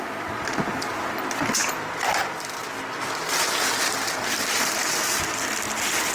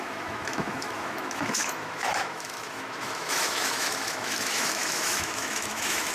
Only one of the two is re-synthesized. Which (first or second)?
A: second